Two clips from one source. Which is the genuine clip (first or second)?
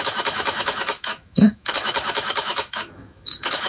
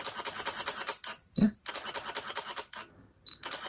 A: second